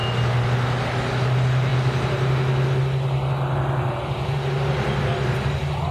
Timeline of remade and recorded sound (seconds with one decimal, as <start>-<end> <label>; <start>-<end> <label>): 0.0-5.9 recorded